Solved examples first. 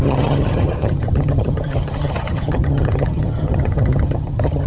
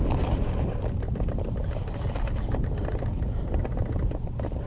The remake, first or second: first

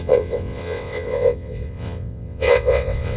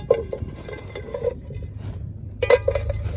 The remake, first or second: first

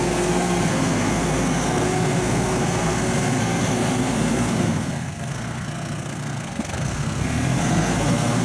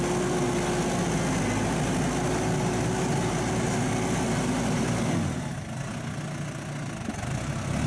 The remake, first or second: first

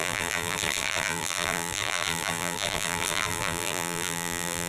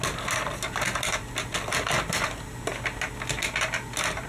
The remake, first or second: first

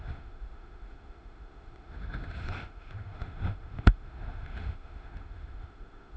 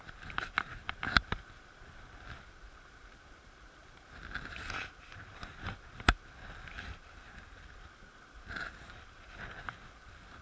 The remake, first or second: first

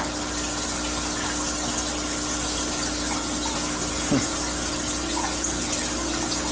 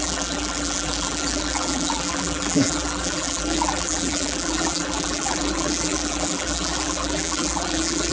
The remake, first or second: second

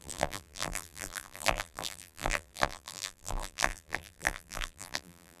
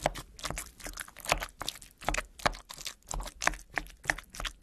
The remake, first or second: first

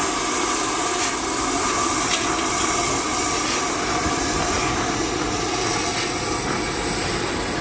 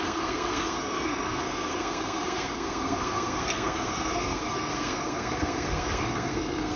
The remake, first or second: second